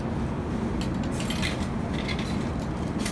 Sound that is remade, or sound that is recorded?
recorded